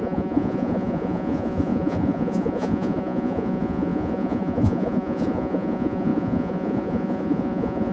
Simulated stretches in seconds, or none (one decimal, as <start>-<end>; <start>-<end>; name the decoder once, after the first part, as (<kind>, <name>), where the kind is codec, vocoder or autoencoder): 0.0-7.9 (vocoder, Vocos)